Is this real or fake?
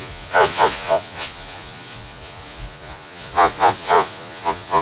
fake